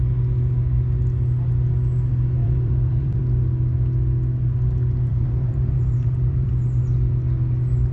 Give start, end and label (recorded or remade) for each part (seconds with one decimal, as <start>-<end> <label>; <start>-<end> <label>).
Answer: 0.0-2.4 recorded; 2.4-3.2 remade; 3.2-5.1 recorded; 5.1-6.5 remade; 6.5-7.9 recorded